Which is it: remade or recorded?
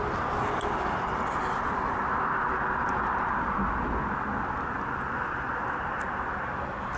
recorded